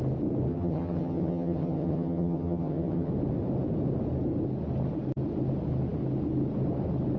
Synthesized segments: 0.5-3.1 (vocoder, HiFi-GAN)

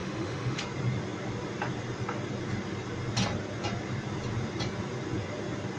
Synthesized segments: 0.0-0.6 (autoencoder, DAC-VAE)

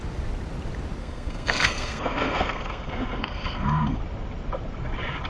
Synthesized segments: 1.0-4.0 (codec, SNAC)